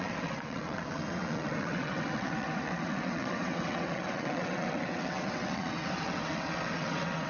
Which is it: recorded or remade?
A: remade